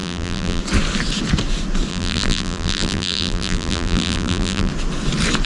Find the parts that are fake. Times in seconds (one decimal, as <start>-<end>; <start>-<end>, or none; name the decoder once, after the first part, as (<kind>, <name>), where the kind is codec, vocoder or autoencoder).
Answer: 0.0-0.6 (vocoder, BigVGAN v2); 1.9-4.7